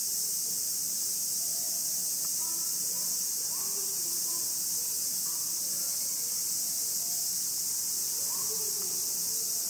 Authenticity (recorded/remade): recorded